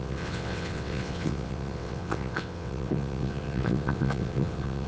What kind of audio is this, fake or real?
fake